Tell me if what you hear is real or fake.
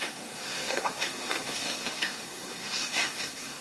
fake